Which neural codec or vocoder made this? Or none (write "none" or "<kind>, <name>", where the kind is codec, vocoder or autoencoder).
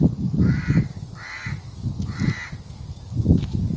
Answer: none